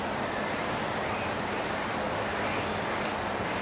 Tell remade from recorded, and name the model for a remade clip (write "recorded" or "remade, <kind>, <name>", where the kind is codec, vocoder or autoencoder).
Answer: recorded